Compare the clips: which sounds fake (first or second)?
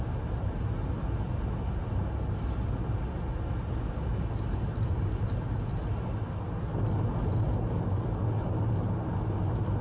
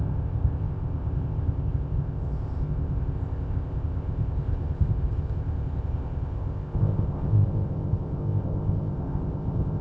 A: second